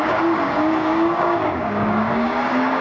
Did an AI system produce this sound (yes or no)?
yes